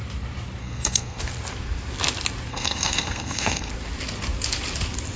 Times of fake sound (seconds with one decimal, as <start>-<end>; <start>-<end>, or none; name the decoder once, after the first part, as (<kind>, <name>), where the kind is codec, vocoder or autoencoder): 0.6-1.2 (codec, SNAC); 2.5-3.7